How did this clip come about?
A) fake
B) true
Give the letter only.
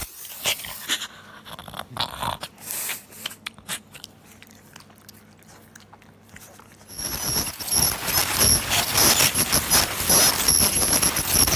B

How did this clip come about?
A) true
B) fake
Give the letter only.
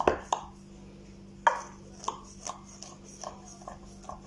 A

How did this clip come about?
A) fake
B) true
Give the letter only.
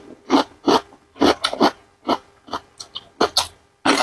B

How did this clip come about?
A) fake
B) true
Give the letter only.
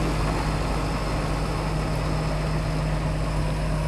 B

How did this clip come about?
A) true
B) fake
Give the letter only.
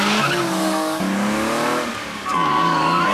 B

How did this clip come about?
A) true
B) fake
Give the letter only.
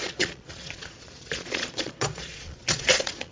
B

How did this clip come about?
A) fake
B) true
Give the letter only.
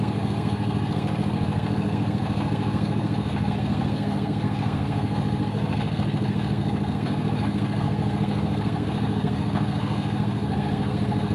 A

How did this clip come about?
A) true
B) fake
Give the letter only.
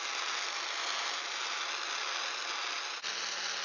A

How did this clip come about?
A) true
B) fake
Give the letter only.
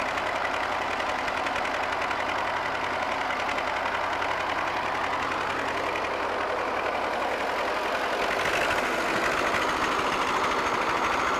A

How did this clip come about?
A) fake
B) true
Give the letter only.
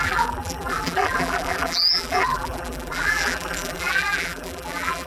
A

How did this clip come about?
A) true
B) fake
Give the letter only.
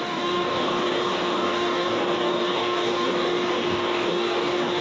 B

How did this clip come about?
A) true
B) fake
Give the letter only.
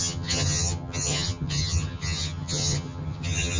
B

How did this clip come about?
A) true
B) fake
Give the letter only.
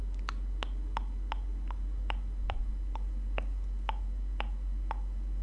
A